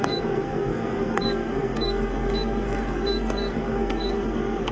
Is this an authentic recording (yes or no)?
no